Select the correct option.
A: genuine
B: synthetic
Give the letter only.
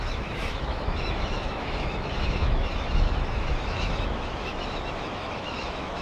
B